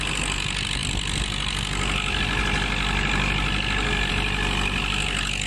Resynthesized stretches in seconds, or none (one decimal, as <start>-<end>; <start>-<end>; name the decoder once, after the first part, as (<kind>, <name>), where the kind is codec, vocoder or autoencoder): none